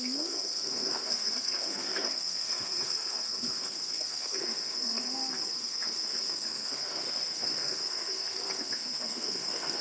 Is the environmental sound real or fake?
fake